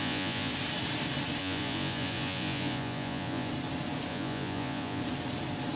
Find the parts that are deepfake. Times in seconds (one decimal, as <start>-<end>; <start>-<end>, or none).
0.0-0.5; 1.4-3.5; 4.1-5.0